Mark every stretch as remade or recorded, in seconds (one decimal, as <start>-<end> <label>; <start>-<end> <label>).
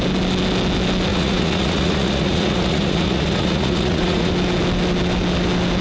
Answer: 0.0-1.1 recorded; 1.1-4.3 remade; 4.3-5.8 recorded